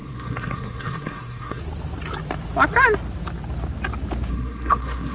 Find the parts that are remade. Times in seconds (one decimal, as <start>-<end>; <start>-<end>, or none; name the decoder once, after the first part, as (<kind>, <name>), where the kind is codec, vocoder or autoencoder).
0.0-1.6 (codec, SNAC); 4.3-5.1